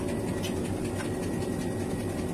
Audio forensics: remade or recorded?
recorded